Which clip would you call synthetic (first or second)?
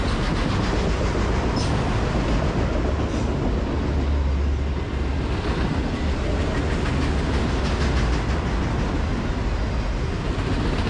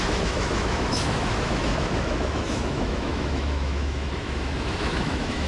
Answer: second